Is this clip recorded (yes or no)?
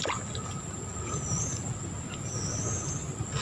yes